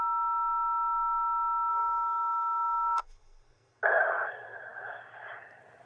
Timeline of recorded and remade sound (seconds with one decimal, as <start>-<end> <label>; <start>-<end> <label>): 0.0-1.7 recorded; 1.7-3.8 remade; 3.8-5.9 recorded